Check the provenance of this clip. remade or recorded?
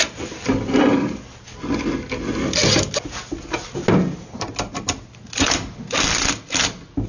recorded